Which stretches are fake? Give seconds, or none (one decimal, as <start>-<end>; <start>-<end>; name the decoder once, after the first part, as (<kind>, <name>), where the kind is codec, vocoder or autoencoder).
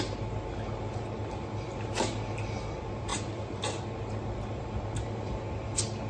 none